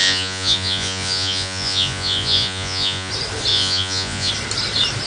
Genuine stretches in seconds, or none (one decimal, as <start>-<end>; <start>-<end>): 3.1-3.5; 4.3-5.1